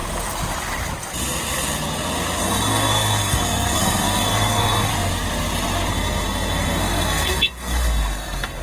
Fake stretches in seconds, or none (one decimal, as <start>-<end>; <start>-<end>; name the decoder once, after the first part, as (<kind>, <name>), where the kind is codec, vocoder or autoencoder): 2.4-4.9 (codec, SNAC); 5.9-8.6